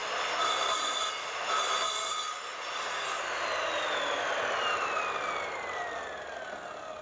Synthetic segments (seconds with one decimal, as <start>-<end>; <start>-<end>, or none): none